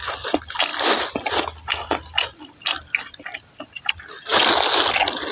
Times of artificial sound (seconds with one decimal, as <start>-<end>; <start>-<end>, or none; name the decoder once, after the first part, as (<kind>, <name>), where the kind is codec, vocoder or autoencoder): none